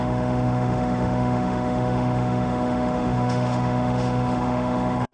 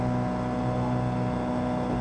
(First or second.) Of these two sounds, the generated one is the first